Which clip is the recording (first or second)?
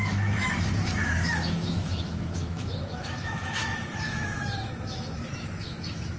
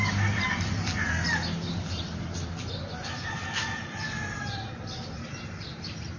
second